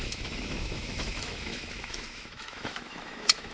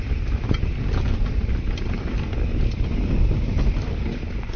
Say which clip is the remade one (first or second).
first